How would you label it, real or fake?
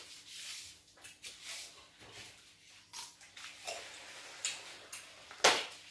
real